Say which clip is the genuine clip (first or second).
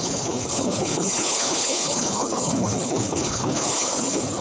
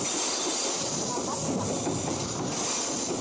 second